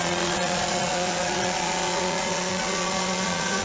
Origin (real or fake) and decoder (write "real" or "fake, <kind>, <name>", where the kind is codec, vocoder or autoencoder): fake, vocoder, Vocos